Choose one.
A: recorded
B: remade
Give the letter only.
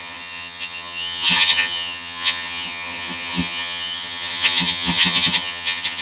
B